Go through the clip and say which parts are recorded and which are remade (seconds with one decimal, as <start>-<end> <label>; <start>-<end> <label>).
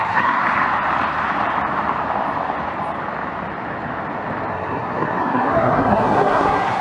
0.0-0.4 remade; 0.4-4.5 recorded; 4.5-6.8 remade